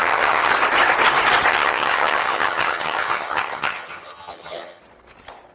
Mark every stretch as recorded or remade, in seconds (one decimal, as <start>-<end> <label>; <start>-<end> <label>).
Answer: 0.0-0.5 remade; 0.5-1.5 recorded; 1.5-4.8 remade; 4.8-5.5 recorded